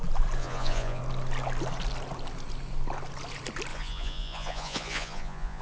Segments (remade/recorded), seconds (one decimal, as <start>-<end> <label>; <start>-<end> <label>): 0.0-0.4 recorded; 0.4-1.0 remade; 1.0-3.7 recorded; 3.7-5.6 remade